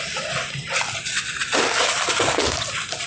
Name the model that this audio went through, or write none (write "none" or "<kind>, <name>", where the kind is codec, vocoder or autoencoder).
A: none